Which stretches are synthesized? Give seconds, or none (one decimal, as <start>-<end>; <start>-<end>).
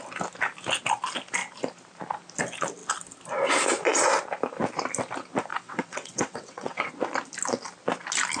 5.5-6.9